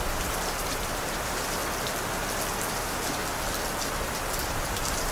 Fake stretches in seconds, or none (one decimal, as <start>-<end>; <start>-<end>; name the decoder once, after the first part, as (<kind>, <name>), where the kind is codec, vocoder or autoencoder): 0.0-1.6 (vocoder, BigVGAN v2); 2.6-3.2; 3.8-5.1